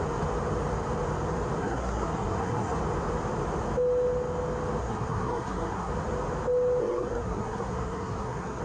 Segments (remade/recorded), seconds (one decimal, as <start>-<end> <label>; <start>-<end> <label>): 0.0-1.6 recorded; 1.6-2.8 remade; 2.8-4.8 recorded; 4.8-5.9 remade; 5.9-6.8 recorded; 6.8-8.6 remade